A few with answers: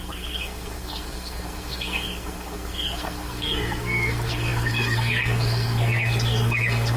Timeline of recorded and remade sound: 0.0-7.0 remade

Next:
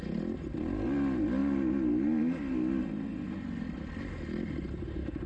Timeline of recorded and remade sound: 0.0-5.3 recorded

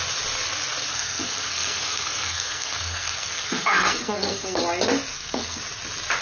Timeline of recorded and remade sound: 0.0-0.9 recorded; 0.9-4.6 remade; 4.6-5.1 recorded; 5.1-5.6 remade; 5.6-6.2 recorded

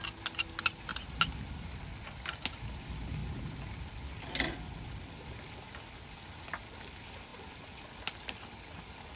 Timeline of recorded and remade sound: 0.0-9.2 recorded